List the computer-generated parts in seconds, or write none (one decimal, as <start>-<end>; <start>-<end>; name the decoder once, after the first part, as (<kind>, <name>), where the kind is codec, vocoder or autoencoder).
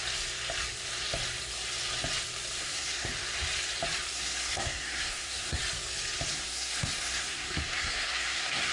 2.6-3.1 (codec, SNAC); 4.1-5.6; 6.3-8.7